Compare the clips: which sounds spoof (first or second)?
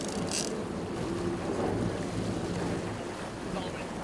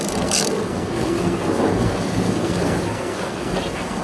second